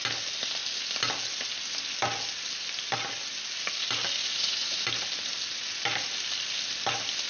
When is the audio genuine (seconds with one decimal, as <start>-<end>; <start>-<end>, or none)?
0.0-4.2; 4.8-7.3